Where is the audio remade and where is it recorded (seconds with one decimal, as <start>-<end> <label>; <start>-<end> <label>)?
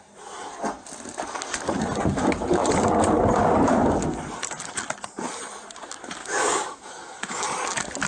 0.0-6.2 recorded; 6.2-7.4 remade; 7.4-8.1 recorded